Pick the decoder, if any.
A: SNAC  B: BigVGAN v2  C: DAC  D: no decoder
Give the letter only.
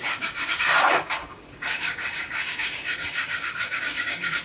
C